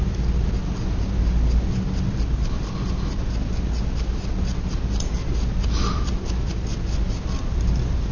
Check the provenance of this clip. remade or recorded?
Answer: recorded